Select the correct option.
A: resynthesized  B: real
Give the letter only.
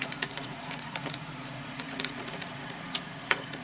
A